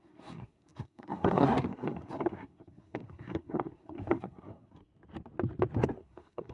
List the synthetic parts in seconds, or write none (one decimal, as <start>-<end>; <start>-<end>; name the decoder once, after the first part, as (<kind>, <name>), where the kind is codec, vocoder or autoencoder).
0.0-4.9 (codec, SNAC); 5.9-6.5